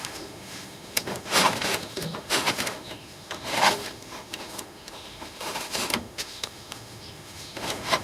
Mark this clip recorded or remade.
remade